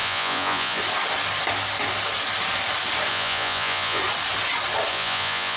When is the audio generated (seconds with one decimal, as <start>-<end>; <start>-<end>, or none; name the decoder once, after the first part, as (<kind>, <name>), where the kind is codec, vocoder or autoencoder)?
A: 0.0-0.8 (vocoder, Vocos); 3.1-4.0; 4.9-5.6